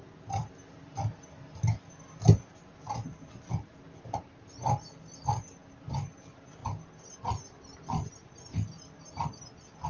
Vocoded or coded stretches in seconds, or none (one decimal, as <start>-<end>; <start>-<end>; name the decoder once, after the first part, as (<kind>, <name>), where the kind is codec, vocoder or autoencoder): none